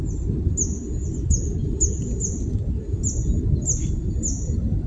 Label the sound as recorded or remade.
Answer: recorded